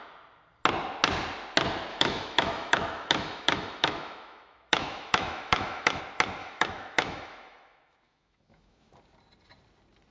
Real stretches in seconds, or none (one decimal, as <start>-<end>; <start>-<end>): 0.0-1.9; 6.0-6.4; 8.9-10.1